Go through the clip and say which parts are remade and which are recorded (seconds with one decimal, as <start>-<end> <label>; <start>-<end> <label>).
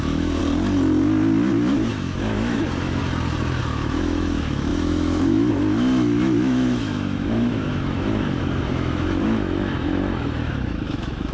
0.0-0.4 remade; 0.4-1.9 recorded; 1.9-3.0 remade; 3.0-3.6 recorded; 3.6-11.3 remade